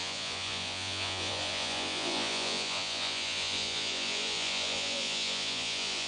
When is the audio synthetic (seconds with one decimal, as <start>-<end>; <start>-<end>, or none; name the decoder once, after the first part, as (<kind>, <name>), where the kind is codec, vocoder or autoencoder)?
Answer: 0.0-6.1 (vocoder, Vocos)